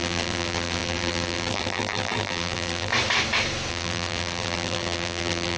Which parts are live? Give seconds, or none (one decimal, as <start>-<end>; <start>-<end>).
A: 2.9-3.7